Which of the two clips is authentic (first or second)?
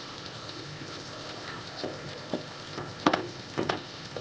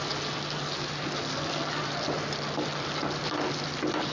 second